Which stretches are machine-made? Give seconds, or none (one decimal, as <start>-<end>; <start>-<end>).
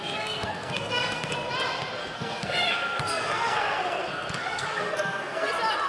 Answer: 0.0-1.5; 2.0-5.5